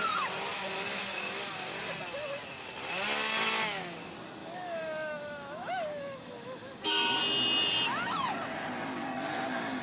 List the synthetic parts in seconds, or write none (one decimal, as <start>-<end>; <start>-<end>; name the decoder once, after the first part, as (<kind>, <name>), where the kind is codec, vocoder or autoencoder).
0.5-1.7 (autoencoder, DAC-VAE); 4.4-7.2